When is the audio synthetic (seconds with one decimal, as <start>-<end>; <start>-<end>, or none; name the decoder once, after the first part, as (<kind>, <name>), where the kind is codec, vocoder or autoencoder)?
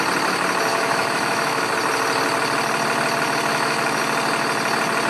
0.7-1.7 (autoencoder, DAC-VAE); 3.5-4.0